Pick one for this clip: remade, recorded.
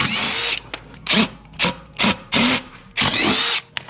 recorded